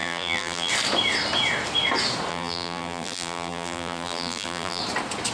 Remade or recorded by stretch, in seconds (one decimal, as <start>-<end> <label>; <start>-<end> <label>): 0.0-0.7 remade; 0.7-2.3 recorded; 2.3-4.8 remade; 4.8-5.3 recorded